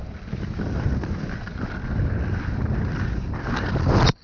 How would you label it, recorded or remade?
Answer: recorded